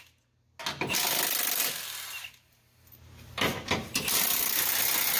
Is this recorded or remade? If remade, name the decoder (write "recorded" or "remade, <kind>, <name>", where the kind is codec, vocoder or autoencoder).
recorded